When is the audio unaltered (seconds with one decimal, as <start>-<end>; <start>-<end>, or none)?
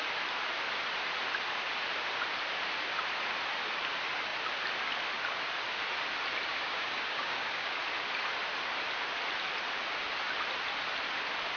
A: 0.0-6.5; 7.8-11.6